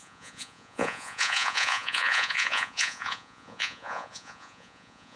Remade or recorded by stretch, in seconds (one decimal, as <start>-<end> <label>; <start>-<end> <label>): 0.0-5.2 remade